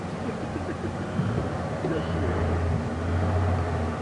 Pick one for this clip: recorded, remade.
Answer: recorded